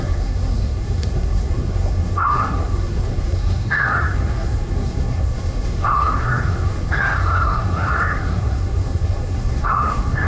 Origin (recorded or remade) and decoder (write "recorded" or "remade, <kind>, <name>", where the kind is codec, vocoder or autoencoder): remade, codec, SNAC